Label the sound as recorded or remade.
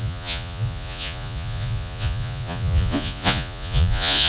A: remade